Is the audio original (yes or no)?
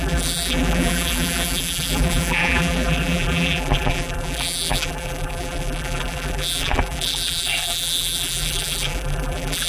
no